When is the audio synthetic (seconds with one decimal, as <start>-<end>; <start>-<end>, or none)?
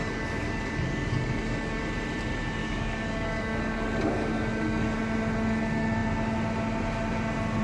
0.0-1.8; 2.6-5.0